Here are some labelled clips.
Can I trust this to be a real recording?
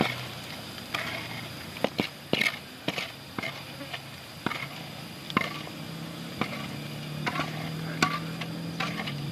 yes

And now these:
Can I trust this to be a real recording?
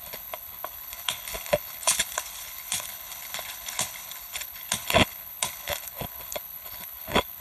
no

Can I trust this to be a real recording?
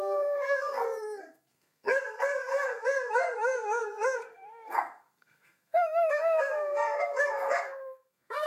no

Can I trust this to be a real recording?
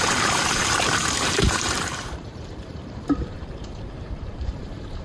no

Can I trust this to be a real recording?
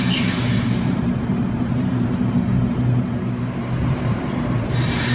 no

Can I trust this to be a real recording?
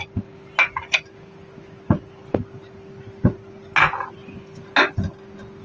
yes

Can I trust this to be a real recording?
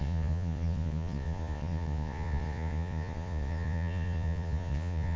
no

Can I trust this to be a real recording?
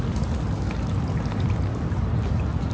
yes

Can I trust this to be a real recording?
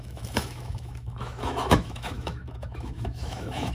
no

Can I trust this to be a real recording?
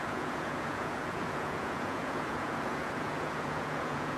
no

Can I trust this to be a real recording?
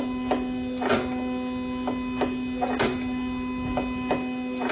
yes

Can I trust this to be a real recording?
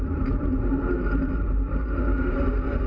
no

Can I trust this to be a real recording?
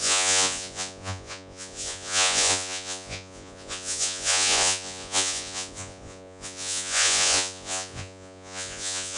no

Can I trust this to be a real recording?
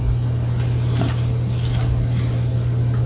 yes